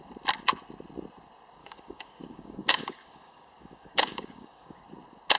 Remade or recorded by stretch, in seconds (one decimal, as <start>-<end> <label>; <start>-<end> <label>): 0.0-1.6 recorded; 1.6-4.8 remade; 4.8-5.4 recorded